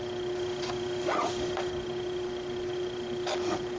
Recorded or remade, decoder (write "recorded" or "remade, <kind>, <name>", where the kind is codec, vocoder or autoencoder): recorded